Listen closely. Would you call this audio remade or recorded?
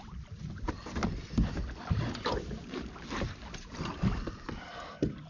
recorded